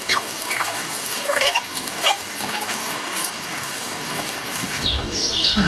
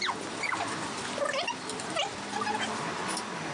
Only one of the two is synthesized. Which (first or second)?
first